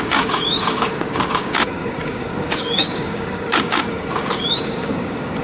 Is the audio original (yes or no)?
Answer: no